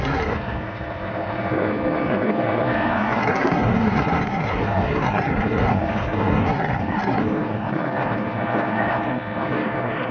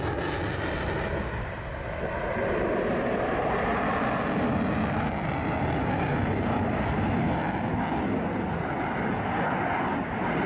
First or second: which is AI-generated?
first